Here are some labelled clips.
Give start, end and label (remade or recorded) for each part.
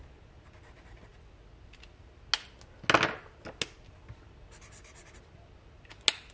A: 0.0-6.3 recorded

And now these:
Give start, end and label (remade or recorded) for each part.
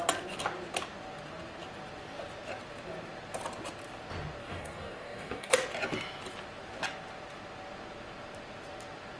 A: 0.0-4.4 recorded; 4.4-5.5 remade; 5.5-9.2 recorded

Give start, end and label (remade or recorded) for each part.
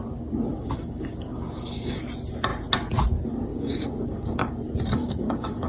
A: 0.0-0.5 recorded; 0.5-2.0 remade; 2.0-3.5 recorded; 3.5-4.5 remade; 4.5-5.0 recorded; 5.0-5.7 remade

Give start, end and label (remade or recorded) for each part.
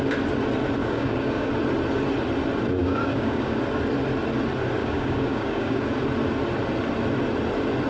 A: 0.0-0.8 recorded; 0.8-1.5 remade; 1.5-2.8 recorded; 2.8-3.6 remade; 3.6-4.8 recorded; 4.8-5.8 remade; 5.8-7.9 recorded